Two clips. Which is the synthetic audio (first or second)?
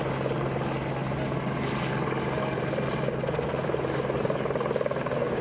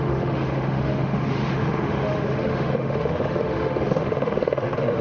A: second